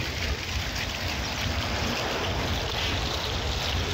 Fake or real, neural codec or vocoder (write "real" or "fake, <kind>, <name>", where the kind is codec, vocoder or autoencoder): real